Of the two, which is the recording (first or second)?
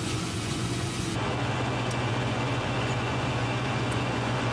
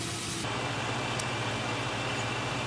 second